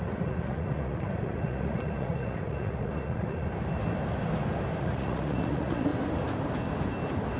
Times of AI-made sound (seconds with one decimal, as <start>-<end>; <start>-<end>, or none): 0.0-3.5; 4.8-5.9